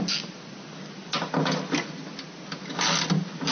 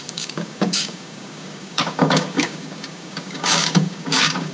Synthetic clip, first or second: second